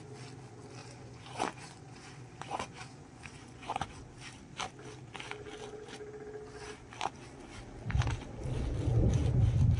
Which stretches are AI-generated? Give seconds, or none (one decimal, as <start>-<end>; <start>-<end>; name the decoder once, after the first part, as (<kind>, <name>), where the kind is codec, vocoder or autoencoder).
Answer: 0.8-4.0 (vocoder, Vocos)

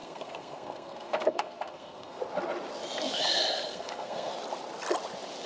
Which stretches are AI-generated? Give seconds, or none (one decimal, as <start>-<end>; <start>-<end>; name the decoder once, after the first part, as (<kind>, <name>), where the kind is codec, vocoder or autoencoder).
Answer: 0.0-2.2 (codec, SNAC); 3.7-4.3

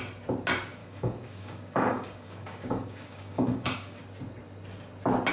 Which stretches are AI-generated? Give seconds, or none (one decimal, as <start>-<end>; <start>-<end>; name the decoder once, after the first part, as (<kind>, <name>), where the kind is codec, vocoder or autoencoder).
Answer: 0.8-4.0 (codec, DAC)